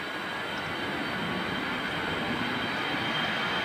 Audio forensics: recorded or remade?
recorded